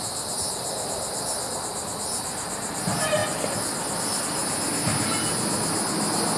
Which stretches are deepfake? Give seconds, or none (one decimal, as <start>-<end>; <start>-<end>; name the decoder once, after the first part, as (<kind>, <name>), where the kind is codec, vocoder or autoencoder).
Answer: 3.2-4.2 (vocoder, BigVGAN v2)